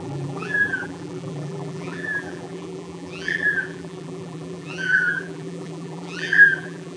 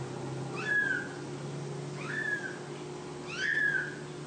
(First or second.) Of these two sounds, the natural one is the second